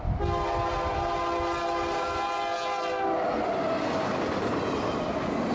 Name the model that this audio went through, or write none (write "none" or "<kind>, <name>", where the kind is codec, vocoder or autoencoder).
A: none